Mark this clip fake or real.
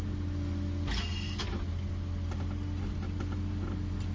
real